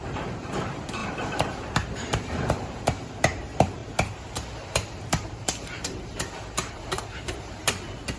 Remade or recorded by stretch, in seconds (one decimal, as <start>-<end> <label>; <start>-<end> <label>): 0.0-8.2 remade